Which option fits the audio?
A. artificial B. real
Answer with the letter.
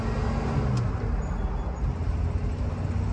B